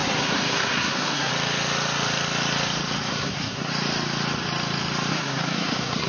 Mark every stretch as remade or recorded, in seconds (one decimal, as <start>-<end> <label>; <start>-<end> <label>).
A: 0.0-1.3 remade; 1.3-3.1 recorded; 3.1-3.7 remade; 3.7-5.1 recorded; 5.1-6.1 remade